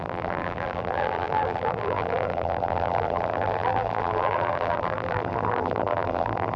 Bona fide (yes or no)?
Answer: no